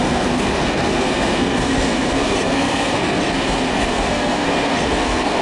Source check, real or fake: fake